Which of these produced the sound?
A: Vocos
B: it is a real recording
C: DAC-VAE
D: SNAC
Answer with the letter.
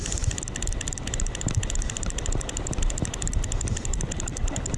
B